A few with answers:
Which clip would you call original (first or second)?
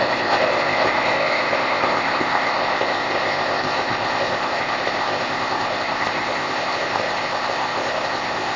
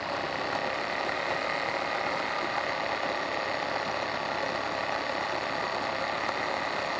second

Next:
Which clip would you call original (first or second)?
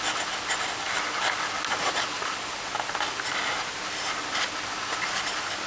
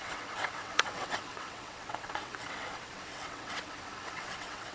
first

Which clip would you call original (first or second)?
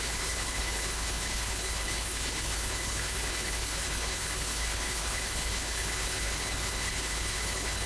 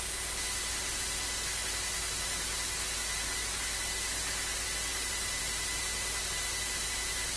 second